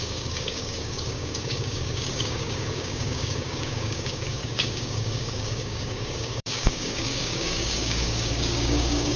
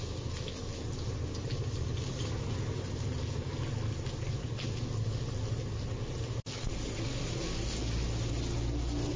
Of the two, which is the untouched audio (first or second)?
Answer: second